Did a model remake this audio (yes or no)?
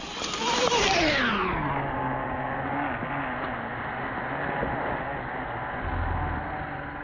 no